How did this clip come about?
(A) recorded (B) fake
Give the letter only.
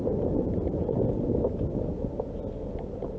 A